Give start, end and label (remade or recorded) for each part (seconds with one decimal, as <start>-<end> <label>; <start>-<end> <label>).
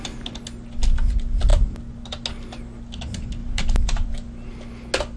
0.0-3.4 recorded; 3.4-4.1 remade; 4.1-5.2 recorded